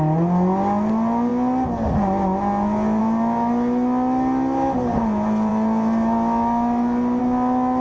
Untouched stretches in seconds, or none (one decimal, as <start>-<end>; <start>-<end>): 0.0-7.8